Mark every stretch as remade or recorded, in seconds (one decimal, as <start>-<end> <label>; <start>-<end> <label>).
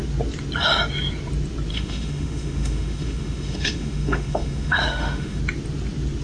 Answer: 0.0-1.7 recorded; 1.7-5.4 remade; 5.4-6.2 recorded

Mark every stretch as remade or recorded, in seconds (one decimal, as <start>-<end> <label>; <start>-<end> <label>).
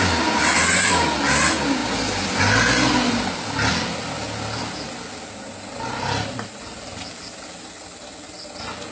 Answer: 0.0-8.9 recorded